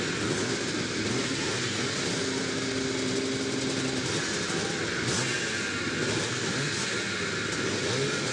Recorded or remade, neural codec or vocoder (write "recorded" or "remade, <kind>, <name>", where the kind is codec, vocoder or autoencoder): recorded